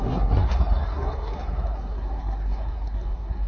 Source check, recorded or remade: remade